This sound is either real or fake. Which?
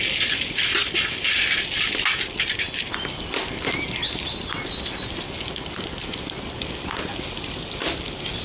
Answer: real